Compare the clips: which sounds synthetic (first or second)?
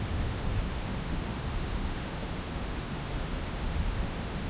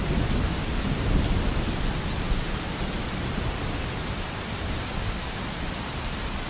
first